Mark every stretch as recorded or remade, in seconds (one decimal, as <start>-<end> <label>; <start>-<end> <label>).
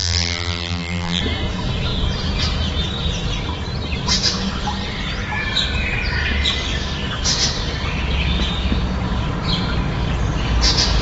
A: 0.0-1.2 remade; 1.2-11.0 recorded